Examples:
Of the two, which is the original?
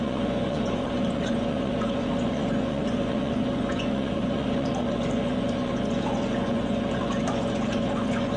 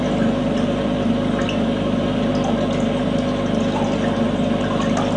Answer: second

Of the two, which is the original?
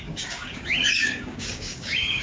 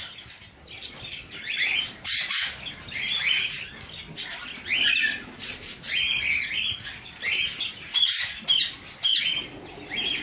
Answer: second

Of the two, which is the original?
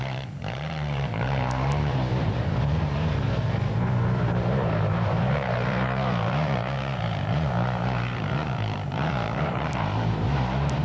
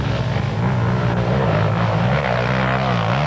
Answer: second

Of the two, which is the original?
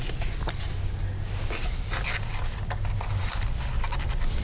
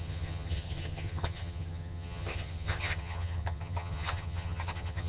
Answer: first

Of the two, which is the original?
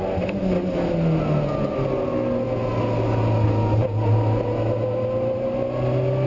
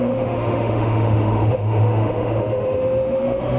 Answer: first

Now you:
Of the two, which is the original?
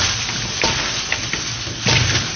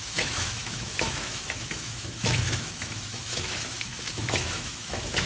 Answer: first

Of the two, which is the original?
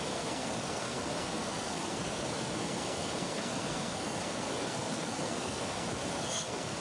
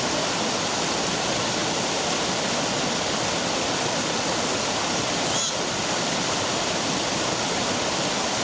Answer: second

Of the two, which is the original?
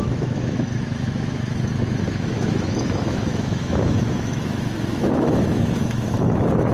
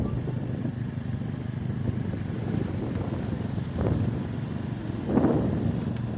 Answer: second